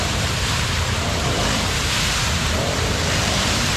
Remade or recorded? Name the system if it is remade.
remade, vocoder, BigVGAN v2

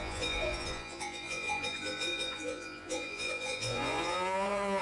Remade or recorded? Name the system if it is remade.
remade, vocoder, Vocos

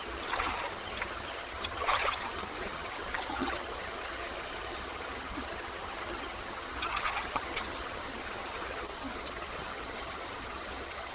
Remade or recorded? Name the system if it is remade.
remade, vocoder, HiFi-GAN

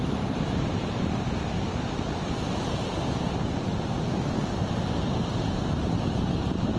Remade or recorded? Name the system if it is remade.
remade, vocoder, BigVGAN v2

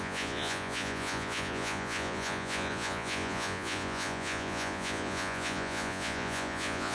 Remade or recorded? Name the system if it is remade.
remade, vocoder, Vocos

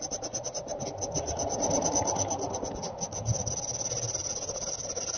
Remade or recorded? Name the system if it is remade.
recorded